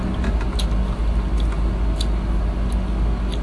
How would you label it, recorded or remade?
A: recorded